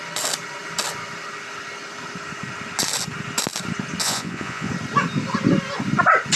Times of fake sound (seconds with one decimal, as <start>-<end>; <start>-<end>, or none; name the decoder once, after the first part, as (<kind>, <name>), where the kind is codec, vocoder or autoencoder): 4.0-4.7 (vocoder, Vocos)